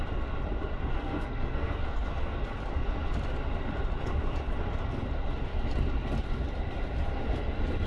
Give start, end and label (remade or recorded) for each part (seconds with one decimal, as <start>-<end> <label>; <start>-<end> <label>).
0.0-0.9 recorded; 0.9-2.4 remade; 2.4-7.9 recorded